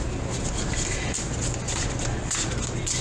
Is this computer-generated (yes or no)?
no